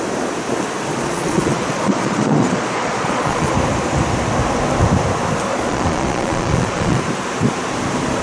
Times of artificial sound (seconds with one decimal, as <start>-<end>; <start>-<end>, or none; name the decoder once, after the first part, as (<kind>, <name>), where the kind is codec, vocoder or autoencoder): 0.9-3.5 (vocoder, Vocos); 5.5-7.0